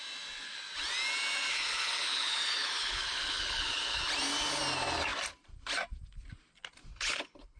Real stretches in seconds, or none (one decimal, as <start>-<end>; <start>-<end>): 0.0-1.5; 4.0-6.9

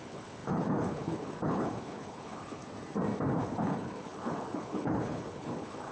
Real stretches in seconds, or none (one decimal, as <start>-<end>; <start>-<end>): 2.6-3.4

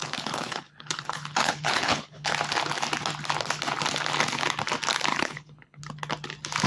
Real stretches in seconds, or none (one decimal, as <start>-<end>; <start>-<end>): 2.3-5.1; 5.8-6.7

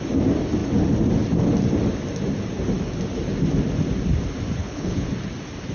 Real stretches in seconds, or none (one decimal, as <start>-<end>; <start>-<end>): 0.0-4.6; 5.1-5.7